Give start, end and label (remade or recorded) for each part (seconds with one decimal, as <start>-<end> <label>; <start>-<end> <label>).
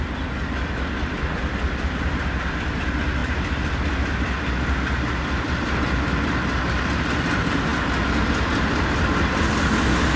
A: 0.0-3.2 recorded; 3.2-5.5 remade; 5.5-10.2 recorded